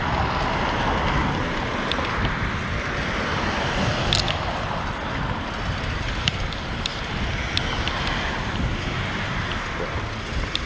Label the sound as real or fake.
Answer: real